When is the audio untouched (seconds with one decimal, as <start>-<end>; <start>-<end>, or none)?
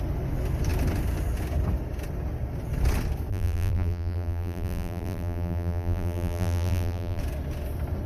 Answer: 0.0-3.3; 7.2-8.1